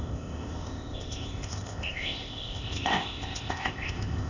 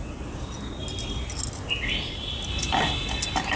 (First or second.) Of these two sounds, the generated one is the first